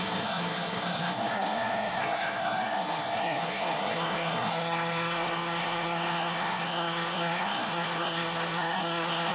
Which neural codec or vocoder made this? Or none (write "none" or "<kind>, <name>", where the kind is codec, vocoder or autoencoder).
codec, SNAC